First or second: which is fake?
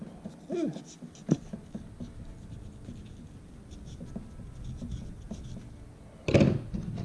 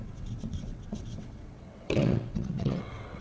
second